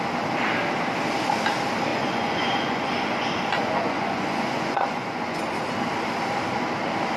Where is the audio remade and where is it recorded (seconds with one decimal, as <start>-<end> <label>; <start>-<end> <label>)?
0.0-1.9 recorded; 1.9-5.4 remade; 5.4-7.2 recorded